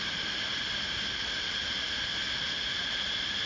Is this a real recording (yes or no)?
yes